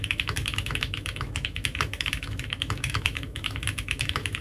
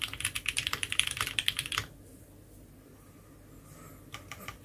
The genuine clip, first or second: second